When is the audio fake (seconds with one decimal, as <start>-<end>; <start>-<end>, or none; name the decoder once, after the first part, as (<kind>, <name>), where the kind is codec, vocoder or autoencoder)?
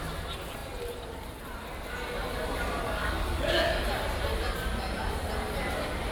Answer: 2.8-3.9 (codec, DAC)